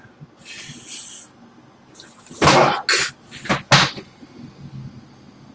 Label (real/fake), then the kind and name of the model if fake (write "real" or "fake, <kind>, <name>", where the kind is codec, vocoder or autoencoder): real